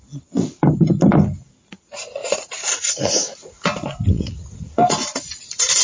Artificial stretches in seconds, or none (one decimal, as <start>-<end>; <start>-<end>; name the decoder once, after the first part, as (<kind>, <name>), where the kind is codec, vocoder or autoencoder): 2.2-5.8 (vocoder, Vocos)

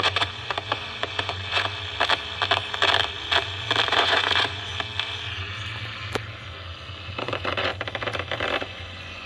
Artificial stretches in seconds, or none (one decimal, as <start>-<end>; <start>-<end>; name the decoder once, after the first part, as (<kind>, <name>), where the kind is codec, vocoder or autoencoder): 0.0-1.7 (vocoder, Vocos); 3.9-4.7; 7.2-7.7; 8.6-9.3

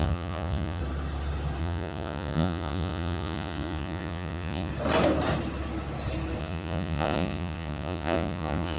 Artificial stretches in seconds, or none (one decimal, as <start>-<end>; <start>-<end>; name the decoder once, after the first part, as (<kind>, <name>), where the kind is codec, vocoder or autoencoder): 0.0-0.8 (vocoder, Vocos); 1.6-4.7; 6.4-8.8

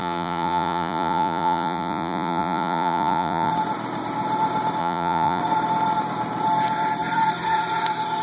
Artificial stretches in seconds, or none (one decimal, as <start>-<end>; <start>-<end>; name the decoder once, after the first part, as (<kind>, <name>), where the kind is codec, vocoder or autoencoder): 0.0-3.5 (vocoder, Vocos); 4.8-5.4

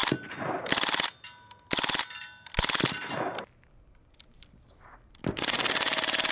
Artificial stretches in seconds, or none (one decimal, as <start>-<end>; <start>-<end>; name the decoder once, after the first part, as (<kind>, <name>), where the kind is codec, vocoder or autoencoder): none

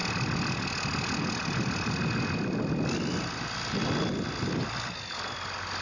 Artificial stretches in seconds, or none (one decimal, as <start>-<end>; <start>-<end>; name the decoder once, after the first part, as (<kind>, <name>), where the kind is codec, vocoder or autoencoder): none

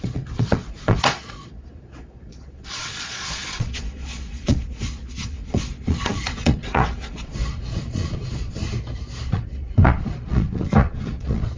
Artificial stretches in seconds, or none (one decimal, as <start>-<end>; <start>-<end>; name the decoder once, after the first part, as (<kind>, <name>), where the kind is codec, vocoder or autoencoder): 0.0-8.6 (vocoder, Vocos); 9.2-11.6